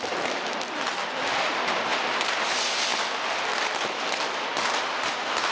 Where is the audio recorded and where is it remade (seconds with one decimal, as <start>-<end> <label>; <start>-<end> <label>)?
0.0-2.9 remade; 2.9-3.8 recorded; 3.8-5.5 remade